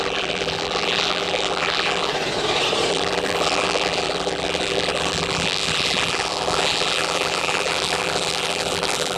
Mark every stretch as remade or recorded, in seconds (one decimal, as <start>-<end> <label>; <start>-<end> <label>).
0.0-2.1 remade; 2.1-2.9 recorded; 2.9-9.2 remade